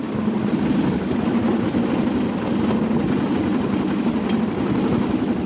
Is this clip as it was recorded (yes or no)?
yes